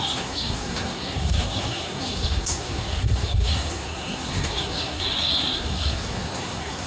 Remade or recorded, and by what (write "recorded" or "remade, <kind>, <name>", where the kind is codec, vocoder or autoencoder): remade, codec, SNAC